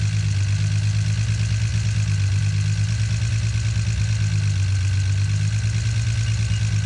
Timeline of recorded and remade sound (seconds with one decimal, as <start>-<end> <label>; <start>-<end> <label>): 0.0-6.9 recorded